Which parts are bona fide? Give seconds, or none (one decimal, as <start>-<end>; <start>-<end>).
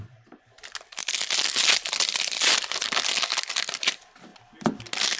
0.0-4.3; 4.8-5.2